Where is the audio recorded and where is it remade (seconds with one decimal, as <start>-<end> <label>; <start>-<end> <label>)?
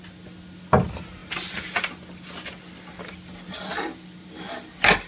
0.0-5.1 recorded